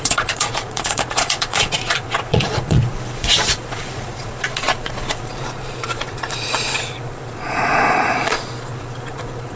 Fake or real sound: fake